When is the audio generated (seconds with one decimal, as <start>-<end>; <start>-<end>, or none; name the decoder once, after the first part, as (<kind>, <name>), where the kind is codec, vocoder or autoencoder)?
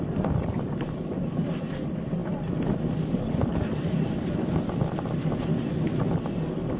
none